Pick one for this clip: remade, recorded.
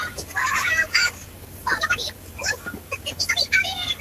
remade